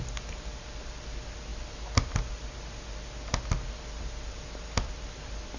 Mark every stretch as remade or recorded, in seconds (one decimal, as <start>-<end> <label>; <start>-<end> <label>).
0.0-5.6 recorded